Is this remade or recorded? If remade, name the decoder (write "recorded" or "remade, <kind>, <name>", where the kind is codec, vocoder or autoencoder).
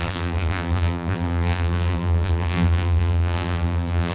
remade, vocoder, BigVGAN v2